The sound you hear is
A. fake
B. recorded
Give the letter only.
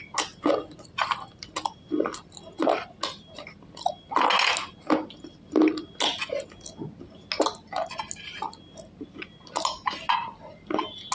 B